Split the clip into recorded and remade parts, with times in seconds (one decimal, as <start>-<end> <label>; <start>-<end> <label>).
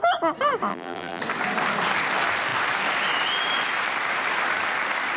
0.0-0.7 recorded; 0.7-1.2 remade; 1.2-5.2 recorded